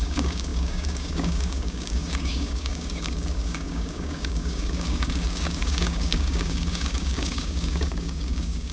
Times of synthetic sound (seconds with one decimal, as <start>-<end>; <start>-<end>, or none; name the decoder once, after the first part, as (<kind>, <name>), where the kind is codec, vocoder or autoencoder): 0.0-8.7 (codec, DAC)